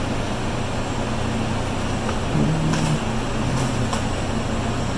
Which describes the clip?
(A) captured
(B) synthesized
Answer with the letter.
A